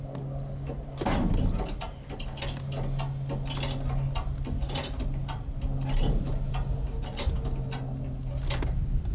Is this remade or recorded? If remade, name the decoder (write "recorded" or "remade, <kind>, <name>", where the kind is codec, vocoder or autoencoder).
recorded